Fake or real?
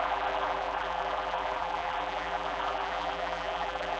fake